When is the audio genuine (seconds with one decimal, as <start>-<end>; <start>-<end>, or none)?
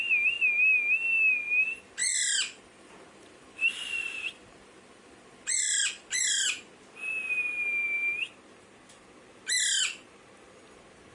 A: 0.0-2.0; 6.3-11.1